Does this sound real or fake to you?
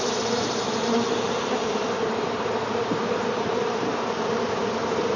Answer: fake